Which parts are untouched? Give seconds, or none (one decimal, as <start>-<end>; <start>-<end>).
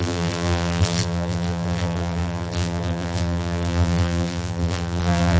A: none